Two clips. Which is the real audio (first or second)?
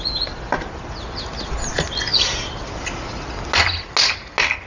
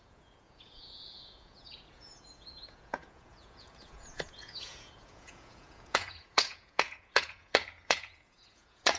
first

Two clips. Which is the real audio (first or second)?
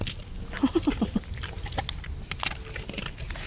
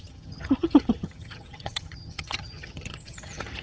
first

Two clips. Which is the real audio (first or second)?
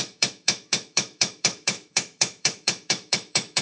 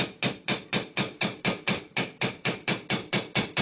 second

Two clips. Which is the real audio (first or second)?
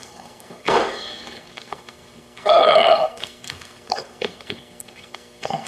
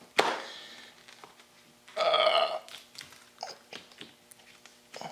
second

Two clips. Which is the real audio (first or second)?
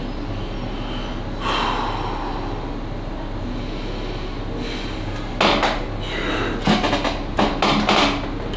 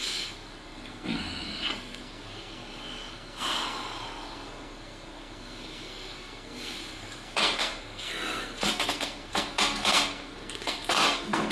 first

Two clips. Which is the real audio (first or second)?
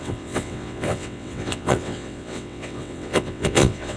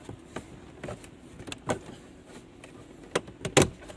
second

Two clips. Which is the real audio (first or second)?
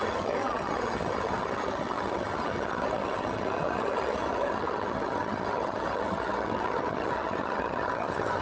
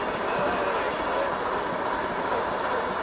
second